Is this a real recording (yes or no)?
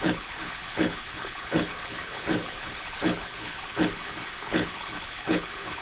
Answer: no